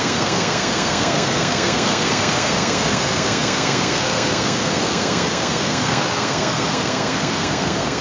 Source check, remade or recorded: remade